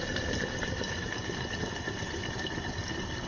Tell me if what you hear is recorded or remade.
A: recorded